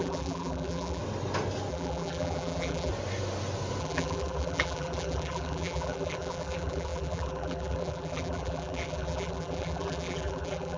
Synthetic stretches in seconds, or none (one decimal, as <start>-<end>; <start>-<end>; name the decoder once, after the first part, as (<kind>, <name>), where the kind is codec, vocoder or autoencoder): 0.0-1.0 (vocoder, BigVGAN v2); 1.7-2.9; 3.8-10.8